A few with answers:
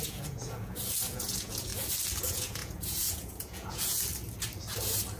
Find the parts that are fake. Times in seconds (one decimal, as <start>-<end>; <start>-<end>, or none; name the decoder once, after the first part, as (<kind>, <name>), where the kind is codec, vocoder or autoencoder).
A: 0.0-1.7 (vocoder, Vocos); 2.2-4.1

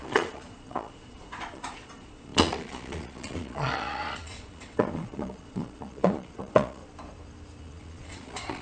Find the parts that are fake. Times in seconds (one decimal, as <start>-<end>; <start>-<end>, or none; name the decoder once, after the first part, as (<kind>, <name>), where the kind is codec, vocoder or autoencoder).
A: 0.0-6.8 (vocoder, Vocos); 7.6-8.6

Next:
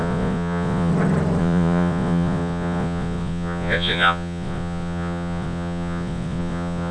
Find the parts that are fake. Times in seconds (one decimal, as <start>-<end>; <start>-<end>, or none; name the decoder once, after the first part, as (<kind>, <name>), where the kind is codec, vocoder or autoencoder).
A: 0.0-0.9 (vocoder, Vocos); 1.4-6.9

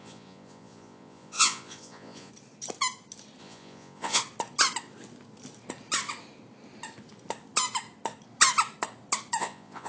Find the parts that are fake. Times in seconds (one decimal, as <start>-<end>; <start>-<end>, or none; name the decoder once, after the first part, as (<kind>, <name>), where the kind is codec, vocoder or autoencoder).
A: 0.0-2.3 (vocoder, Vocos); 3.4-4.2; 9.4-9.9